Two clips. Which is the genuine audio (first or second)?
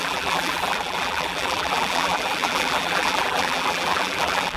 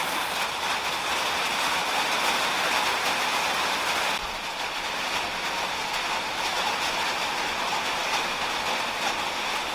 second